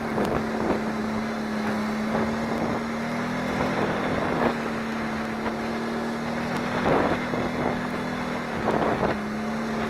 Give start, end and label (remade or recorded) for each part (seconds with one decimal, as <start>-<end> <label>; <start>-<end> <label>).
0.0-4.9 remade; 4.9-5.7 recorded; 5.7-9.9 remade